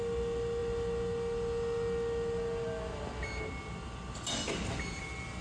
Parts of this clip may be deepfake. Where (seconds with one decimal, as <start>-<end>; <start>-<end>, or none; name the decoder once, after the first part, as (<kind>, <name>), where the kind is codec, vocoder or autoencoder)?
none